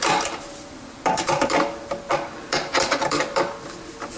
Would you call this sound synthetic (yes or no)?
yes